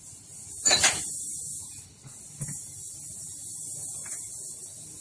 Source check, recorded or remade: recorded